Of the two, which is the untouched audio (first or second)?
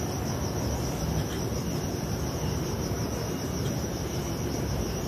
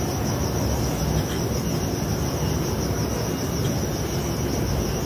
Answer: second